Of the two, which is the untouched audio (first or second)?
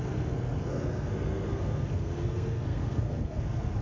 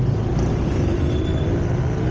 second